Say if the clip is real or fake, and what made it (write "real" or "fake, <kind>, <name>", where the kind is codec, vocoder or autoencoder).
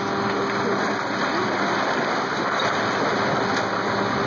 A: real